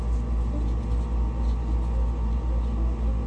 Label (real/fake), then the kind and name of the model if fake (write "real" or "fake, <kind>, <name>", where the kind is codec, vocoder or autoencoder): real